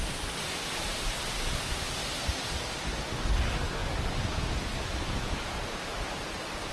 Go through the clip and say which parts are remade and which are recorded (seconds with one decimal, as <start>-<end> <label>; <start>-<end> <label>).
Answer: 0.0-6.7 recorded